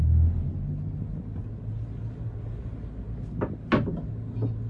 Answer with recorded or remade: recorded